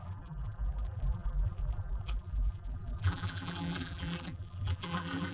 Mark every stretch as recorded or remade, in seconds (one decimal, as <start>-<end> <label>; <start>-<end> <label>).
0.0-5.3 remade